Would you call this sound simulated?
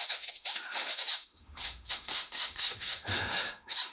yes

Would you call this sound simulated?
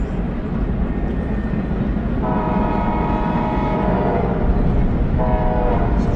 no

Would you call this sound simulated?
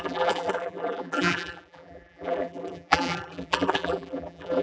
yes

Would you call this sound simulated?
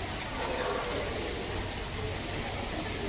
no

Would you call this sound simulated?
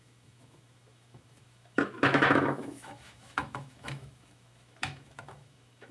yes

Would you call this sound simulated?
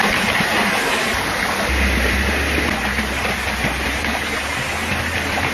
no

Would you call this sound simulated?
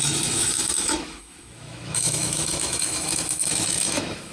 yes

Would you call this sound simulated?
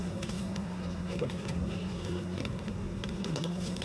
yes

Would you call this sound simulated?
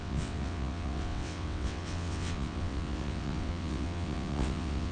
yes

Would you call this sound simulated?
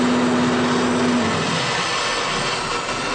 no